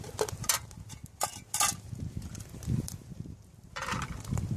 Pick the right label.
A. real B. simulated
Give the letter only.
A